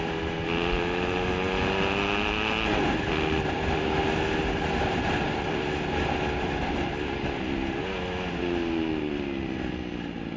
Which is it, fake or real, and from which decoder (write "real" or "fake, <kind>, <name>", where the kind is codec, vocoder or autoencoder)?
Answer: real